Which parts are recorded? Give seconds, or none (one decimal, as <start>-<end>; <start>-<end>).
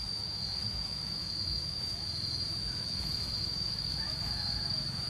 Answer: none